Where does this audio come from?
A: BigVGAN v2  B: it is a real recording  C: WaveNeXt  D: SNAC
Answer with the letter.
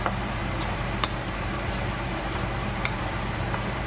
A